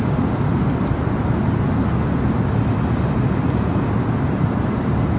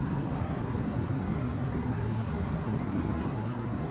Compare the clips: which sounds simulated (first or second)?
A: second